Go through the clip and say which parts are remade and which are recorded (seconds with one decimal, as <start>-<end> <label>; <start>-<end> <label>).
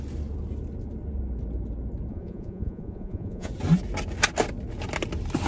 0.0-2.1 recorded; 2.1-3.5 remade; 3.5-5.5 recorded